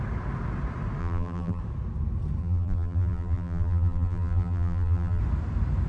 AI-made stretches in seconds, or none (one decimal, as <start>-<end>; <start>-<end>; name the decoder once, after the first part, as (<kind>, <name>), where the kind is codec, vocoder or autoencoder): 1.0-1.6 (vocoder, BigVGAN v2); 2.4-5.2